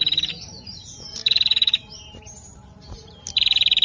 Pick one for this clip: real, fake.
fake